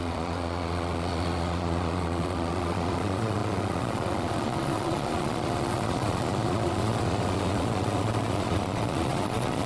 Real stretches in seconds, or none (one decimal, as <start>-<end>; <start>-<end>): none